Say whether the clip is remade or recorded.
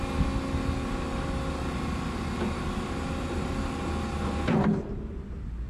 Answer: recorded